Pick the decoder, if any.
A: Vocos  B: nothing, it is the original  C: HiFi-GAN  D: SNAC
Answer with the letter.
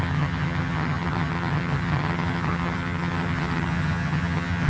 C